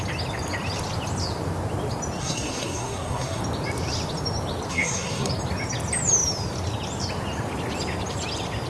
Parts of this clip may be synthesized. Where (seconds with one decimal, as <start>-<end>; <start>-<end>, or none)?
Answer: 2.2-3.4; 4.7-5.3